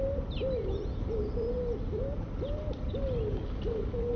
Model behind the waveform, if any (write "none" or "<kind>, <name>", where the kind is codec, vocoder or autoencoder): none